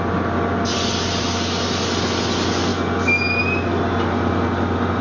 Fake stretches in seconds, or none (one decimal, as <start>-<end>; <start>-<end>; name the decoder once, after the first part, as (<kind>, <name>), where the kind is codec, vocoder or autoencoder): none